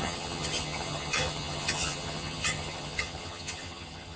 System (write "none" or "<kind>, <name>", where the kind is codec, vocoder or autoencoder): vocoder, HiFi-GAN